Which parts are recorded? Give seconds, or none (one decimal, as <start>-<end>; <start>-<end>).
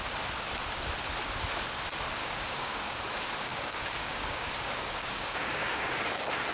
0.0-2.2; 3.0-3.5; 5.9-6.5